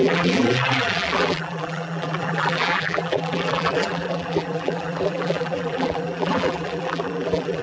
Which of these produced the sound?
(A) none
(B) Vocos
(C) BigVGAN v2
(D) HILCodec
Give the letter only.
C